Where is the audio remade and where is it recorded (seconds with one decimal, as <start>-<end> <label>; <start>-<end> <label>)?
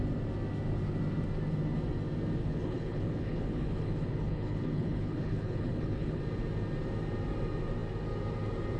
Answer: 0.0-2.4 recorded; 2.4-6.2 remade; 6.2-8.8 recorded